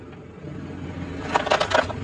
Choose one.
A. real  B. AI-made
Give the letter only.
A